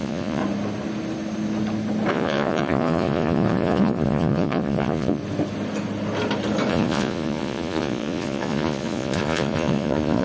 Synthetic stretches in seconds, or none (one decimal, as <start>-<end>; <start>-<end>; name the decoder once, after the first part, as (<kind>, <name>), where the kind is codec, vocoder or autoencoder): 0.0-0.4 (vocoder, Vocos); 2.1-5.2; 6.7-10.2